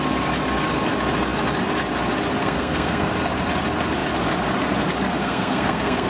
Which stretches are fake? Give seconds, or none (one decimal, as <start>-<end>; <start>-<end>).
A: 2.4-3.1; 5.2-6.1